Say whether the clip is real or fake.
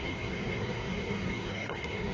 fake